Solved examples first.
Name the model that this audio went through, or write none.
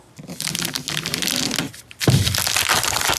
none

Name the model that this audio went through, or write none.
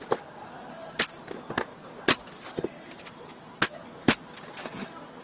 none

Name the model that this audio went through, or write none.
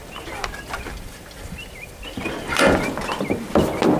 none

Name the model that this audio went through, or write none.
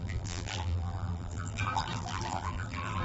vocoder, BigVGAN v2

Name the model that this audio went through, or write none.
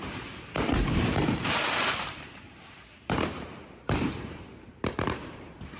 vocoder, BigVGAN v2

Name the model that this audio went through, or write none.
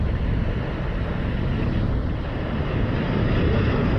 none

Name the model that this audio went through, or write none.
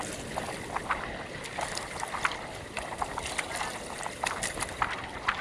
none